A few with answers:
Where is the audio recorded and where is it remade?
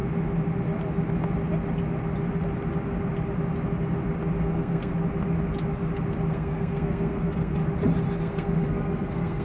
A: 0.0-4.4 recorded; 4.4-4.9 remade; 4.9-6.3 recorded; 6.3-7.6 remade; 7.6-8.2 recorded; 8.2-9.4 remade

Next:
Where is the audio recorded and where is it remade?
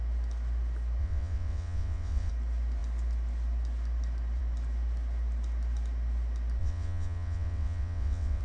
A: 0.0-1.0 recorded; 1.0-2.3 remade; 2.3-6.6 recorded; 6.6-8.4 remade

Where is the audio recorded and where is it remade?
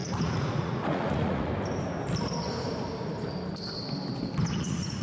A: 0.0-1.5 remade; 1.5-4.5 recorded; 4.5-5.0 remade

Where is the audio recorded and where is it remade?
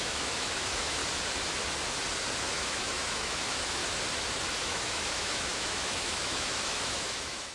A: 0.0-1.0 remade; 1.0-2.5 recorded; 2.5-3.8 remade; 3.8-4.6 recorded; 4.6-7.5 remade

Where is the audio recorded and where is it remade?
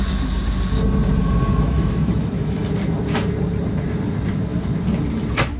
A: 0.0-1.2 recorded; 1.2-2.7 remade; 2.7-5.6 recorded